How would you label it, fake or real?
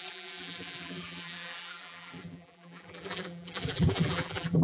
fake